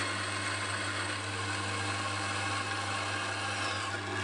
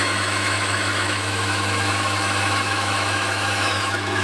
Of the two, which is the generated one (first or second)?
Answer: second